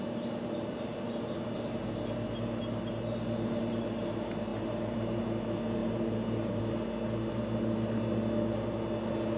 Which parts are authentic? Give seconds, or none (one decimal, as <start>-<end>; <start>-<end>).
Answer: 0.0-4.5; 5.2-5.8; 6.6-9.4